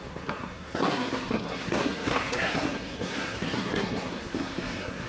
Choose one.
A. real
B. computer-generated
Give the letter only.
B